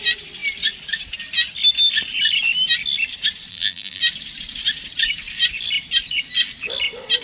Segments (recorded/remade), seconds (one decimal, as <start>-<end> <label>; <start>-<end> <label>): 0.0-3.5 recorded; 3.5-4.0 remade; 4.0-7.2 recorded